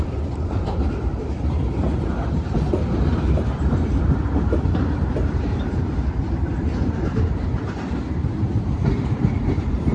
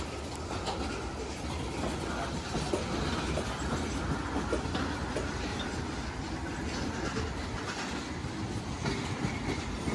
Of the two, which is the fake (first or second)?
first